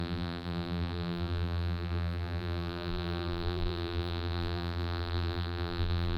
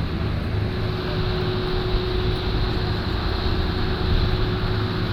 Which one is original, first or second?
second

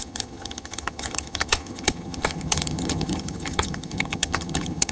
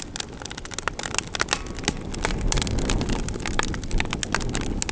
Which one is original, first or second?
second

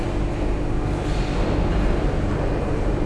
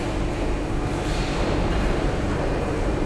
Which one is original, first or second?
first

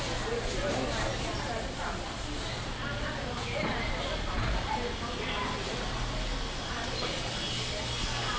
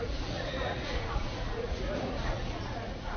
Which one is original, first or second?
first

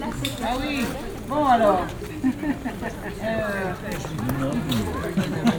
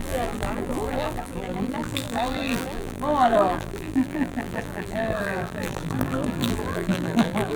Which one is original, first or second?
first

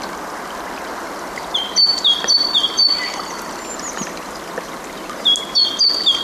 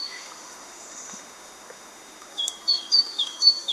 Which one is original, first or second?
first